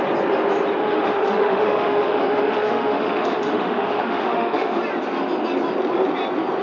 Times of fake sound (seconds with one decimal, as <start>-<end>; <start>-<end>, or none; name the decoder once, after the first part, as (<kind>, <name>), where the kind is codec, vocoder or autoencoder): 0.8-4.8 (autoencoder, DAC-VAE)